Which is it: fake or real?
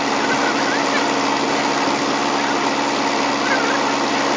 real